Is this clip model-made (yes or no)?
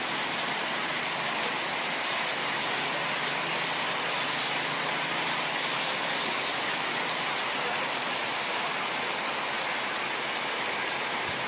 no